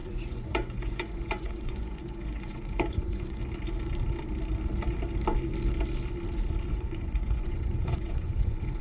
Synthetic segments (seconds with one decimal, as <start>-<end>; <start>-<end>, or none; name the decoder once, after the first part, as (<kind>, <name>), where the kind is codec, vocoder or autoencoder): 0.0-3.4 (vocoder, Vocos); 6.7-8.8